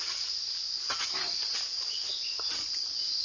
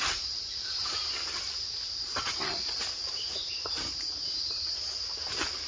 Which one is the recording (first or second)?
first